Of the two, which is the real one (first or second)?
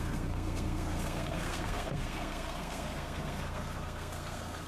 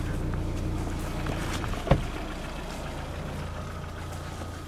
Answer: second